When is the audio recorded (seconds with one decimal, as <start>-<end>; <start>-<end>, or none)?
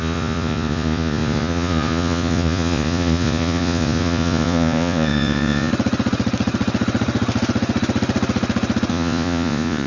5.7-8.9